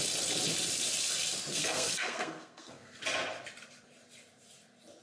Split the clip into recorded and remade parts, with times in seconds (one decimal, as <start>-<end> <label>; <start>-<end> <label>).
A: 0.0-1.5 recorded; 1.5-3.0 remade; 3.0-5.0 recorded